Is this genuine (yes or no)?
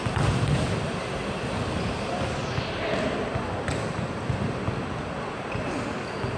yes